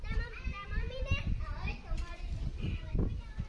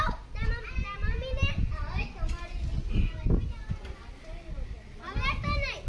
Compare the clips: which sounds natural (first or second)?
second